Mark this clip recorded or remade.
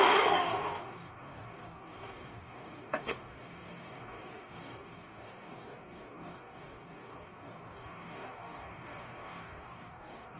remade